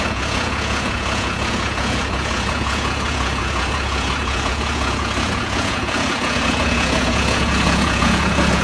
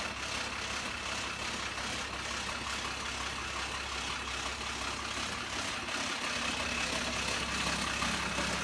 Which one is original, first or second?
second